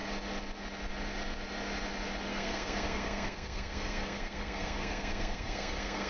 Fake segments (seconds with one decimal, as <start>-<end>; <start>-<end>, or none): 2.3-6.1